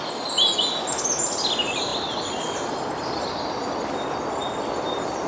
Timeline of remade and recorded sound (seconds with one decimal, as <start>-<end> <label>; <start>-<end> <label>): 0.0-5.3 recorded